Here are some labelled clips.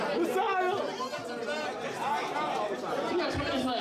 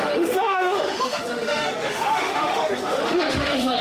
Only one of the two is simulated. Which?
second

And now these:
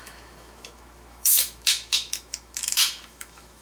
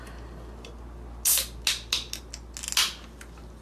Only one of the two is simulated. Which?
first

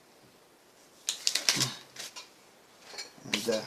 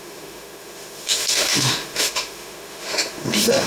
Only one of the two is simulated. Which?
second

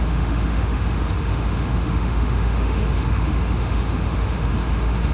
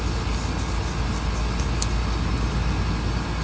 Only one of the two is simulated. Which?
first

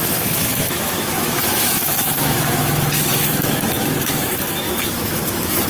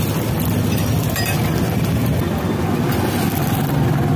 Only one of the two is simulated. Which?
first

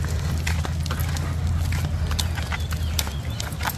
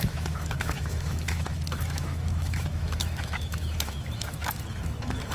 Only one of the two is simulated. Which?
second